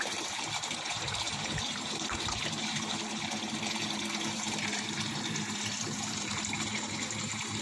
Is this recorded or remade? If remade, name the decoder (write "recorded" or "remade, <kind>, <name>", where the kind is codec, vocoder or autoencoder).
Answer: remade, vocoder, BigVGAN v2